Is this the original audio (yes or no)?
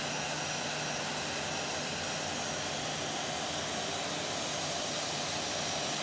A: yes